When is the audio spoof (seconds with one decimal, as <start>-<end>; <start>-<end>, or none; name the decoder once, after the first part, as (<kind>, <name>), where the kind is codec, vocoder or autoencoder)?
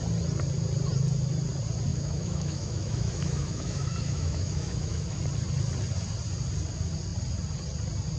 1.9-5.2 (autoencoder, DAC-VAE)